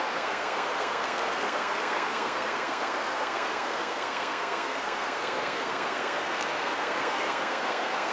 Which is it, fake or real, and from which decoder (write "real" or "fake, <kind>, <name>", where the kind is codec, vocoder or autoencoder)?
fake, codec, SNAC